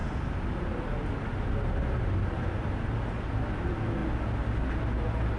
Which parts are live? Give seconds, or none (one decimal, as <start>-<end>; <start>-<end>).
0.0-5.4